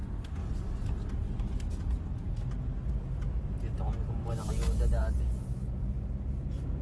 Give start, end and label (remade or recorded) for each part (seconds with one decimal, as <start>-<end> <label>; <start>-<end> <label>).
0.0-5.0 recorded; 5.0-5.9 remade; 5.9-6.8 recorded